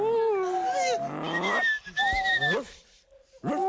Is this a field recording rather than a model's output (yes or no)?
yes